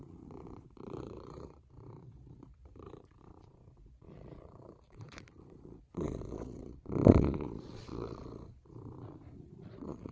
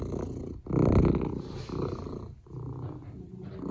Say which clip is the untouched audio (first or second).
second